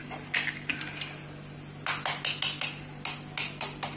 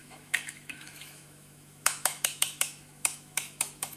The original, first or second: first